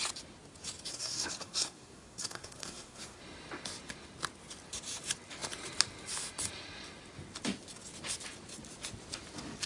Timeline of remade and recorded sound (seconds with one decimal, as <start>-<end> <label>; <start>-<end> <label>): 0.0-0.9 recorded; 0.9-3.2 remade; 3.2-9.7 recorded